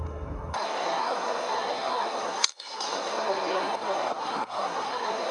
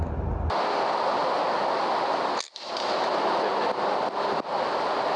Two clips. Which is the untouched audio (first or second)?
second